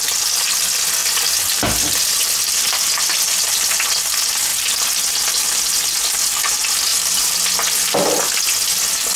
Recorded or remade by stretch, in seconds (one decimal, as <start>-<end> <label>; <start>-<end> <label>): 0.0-1.0 recorded; 1.0-3.7 remade; 3.7-6.9 recorded; 6.9-8.4 remade; 8.4-9.2 recorded